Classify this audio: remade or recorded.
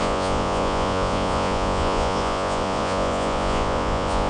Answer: remade